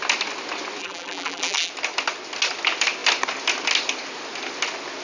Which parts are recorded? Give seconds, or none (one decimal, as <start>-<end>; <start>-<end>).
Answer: 0.0-0.8; 1.7-5.0